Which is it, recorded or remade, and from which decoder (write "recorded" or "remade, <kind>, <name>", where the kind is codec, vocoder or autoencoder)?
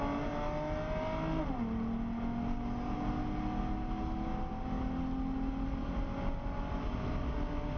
recorded